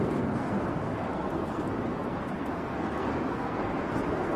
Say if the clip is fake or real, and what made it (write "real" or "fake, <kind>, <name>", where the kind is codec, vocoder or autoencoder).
fake, codec, SNAC